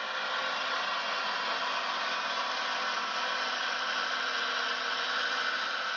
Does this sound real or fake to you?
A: real